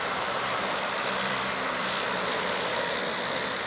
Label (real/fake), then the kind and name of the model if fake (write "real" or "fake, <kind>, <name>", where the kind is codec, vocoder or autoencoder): fake, vocoder, BigVGAN v2